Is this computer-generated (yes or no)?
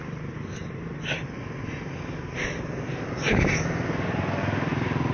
no